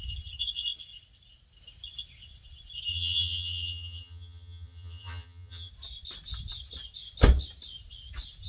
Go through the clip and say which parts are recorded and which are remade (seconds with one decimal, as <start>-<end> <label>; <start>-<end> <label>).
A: 0.0-2.9 recorded; 2.9-5.7 remade; 5.7-8.5 recorded